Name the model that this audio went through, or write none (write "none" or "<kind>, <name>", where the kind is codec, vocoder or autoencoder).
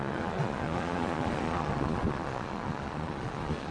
vocoder, Vocos